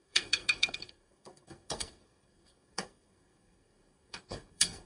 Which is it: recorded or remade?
remade